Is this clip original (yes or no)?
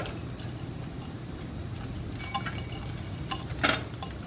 yes